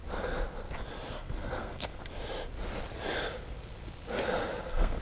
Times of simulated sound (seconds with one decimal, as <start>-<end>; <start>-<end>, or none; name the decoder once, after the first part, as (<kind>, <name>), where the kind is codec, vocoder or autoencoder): 1.1-2.0 (codec, SNAC); 4.6-5.0